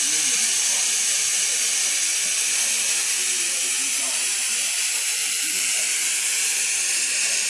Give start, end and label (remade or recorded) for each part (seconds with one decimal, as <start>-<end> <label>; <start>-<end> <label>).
0.0-3.0 recorded; 3.0-6.0 remade; 6.0-7.5 recorded